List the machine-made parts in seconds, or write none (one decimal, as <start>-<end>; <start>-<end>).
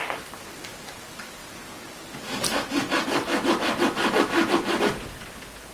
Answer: none